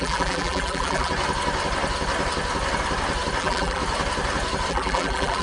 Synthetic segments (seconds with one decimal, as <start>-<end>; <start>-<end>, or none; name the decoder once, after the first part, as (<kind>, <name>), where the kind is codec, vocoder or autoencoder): 0.0-1.1 (vocoder, BigVGAN v2); 3.4-3.8; 4.7-5.4